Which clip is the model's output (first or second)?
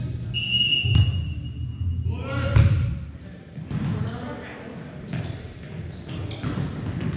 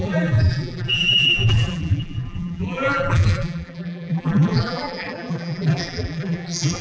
second